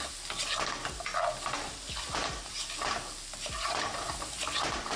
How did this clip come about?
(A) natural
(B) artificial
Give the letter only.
A